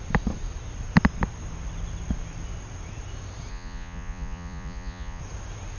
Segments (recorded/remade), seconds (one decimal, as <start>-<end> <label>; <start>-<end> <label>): 0.0-3.5 recorded; 3.5-5.2 remade; 5.2-5.8 recorded